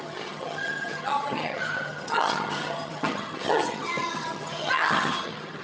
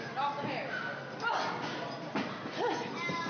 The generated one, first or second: first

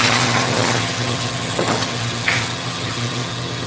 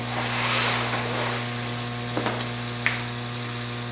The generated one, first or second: first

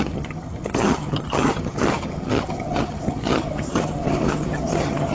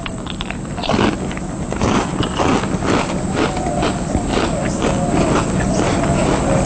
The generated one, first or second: first